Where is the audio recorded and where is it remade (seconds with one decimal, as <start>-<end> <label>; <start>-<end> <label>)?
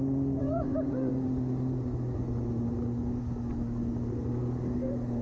0.0-0.4 recorded; 0.4-1.1 remade; 1.1-5.2 recorded